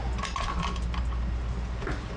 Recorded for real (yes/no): yes